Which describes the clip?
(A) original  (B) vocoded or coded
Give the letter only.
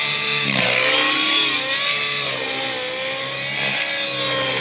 A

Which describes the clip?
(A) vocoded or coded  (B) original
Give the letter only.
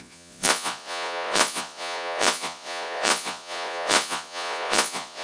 A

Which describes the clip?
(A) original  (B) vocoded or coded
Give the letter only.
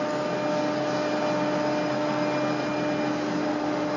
A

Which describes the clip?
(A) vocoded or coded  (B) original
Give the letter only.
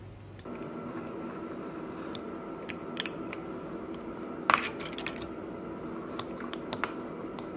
B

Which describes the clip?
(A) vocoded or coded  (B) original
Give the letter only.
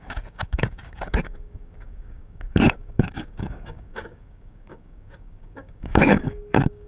A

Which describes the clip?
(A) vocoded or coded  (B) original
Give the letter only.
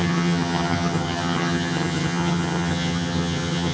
A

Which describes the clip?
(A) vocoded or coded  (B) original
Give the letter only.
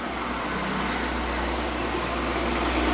B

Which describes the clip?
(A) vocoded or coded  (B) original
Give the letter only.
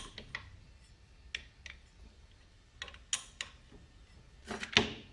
B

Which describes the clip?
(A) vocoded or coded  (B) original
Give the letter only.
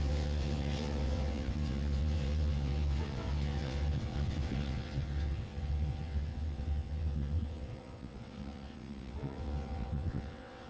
A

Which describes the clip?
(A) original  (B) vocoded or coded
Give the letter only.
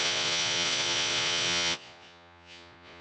B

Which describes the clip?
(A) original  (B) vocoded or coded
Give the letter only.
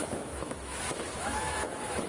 B